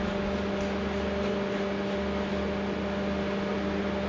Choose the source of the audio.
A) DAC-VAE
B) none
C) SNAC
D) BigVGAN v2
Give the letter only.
B